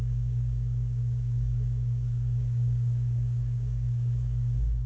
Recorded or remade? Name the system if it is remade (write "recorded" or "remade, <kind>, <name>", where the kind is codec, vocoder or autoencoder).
remade, codec, DAC